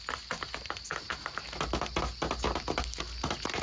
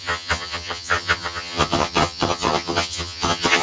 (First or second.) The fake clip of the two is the second